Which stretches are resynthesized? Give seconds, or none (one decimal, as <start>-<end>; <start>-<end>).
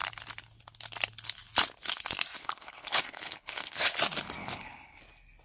2.4-3.9; 4.4-5.0